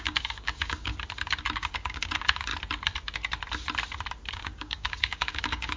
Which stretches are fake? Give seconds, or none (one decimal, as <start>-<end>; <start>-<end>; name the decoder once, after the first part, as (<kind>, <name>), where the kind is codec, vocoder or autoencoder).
0.0-0.9 (codec, DAC); 1.4-2.5; 4.3-5.8